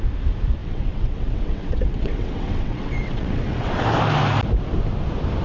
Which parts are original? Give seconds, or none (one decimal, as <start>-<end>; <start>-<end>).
0.0-0.6; 3.8-5.4